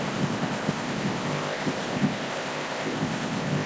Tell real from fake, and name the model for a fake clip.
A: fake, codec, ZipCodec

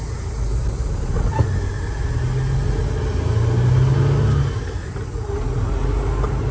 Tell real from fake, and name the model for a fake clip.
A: real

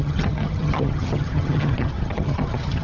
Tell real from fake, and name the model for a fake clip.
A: fake, vocoder, HiFi-GAN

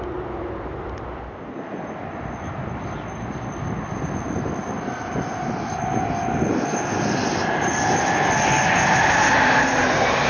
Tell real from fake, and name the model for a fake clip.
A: real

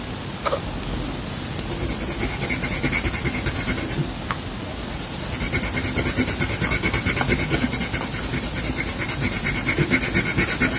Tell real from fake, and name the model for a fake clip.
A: real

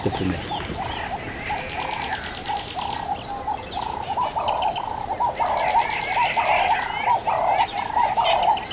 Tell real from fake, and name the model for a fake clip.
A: real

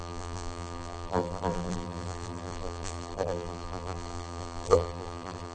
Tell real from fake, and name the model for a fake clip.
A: fake, vocoder, BigVGAN v2